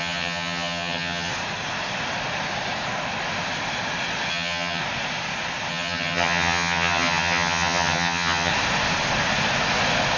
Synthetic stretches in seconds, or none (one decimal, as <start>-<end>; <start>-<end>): 0.0-1.3; 4.3-4.8; 5.7-8.5